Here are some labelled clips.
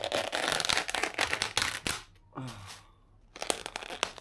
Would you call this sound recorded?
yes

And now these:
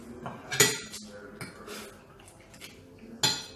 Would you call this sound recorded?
yes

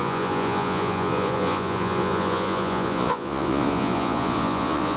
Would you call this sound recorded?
no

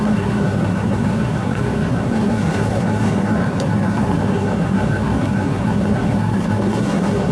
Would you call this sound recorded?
no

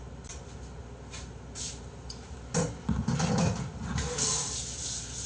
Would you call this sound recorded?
yes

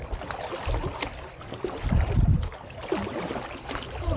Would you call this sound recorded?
yes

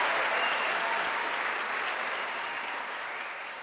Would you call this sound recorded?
yes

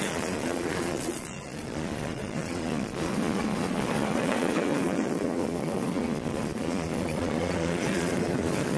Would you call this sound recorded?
no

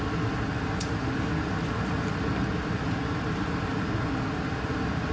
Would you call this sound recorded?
yes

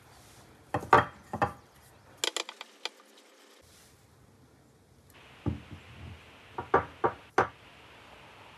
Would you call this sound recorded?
yes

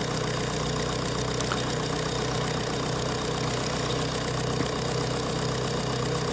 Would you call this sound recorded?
yes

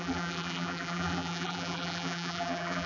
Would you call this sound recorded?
no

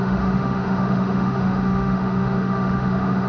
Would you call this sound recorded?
no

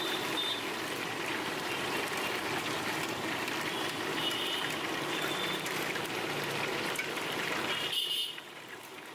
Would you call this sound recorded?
no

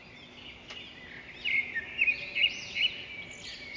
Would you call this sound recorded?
yes